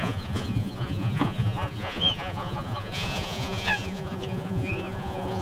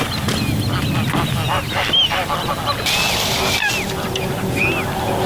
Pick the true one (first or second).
second